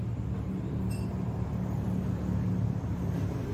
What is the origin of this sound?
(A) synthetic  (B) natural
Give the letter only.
B